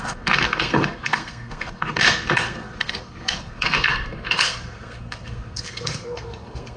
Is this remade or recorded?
remade